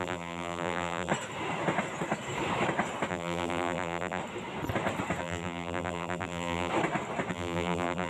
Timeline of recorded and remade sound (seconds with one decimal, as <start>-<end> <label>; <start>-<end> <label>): 0.0-1.1 remade; 1.1-3.1 recorded; 3.1-4.2 remade; 4.2-5.2 recorded; 5.2-6.7 remade; 6.7-7.3 recorded; 7.3-8.1 remade